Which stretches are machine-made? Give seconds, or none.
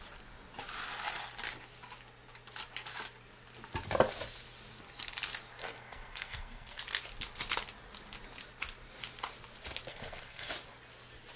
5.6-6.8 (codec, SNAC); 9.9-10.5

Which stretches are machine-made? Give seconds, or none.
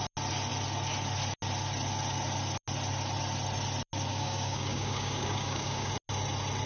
4.1-5.9 (codec, DAC)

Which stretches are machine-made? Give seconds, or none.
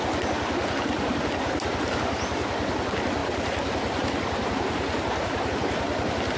3.2-5.5 (vocoder, BigVGAN v2)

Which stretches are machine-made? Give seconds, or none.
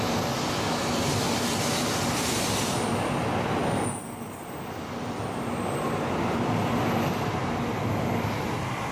none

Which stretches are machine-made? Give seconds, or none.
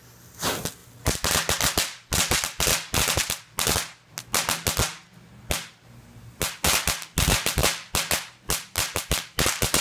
none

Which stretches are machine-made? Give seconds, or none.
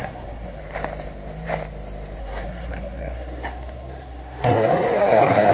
0.0-0.6 (codec, SNAC); 2.2-5.5